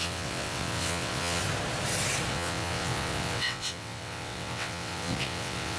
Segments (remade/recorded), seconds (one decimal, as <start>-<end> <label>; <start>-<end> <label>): 0.0-1.4 remade; 1.4-2.3 recorded; 2.3-5.8 remade